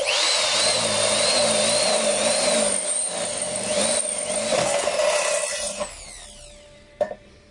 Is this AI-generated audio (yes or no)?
no